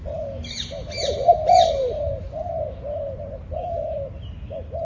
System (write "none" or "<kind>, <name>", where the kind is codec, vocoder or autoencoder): none